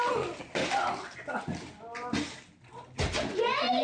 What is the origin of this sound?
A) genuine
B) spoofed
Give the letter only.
A